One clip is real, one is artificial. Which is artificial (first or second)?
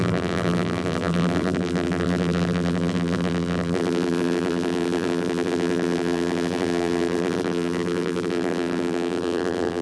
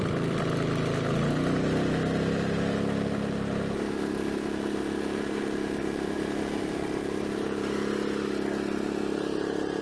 first